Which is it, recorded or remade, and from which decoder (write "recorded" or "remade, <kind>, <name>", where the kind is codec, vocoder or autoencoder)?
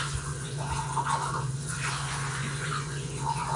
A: remade, vocoder, Vocos